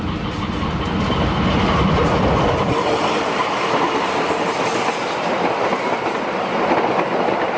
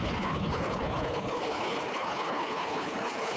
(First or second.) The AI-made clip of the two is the second